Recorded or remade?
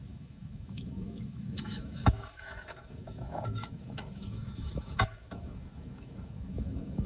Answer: remade